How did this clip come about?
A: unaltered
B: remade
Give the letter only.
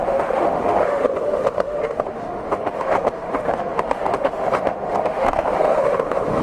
B